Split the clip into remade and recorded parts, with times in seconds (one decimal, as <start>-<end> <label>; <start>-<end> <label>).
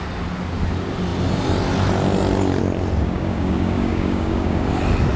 0.0-3.0 recorded; 3.0-4.7 remade; 4.7-5.2 recorded